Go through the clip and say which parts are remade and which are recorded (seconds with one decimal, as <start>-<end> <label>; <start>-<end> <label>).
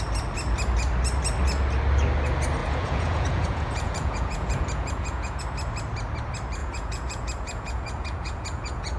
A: 0.0-2.6 recorded; 2.6-5.4 remade; 5.4-6.6 recorded; 6.6-9.0 remade